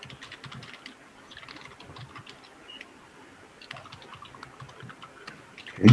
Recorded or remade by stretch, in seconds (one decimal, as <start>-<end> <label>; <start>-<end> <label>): 0.0-5.9 recorded